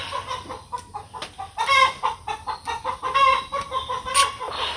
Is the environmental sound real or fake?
real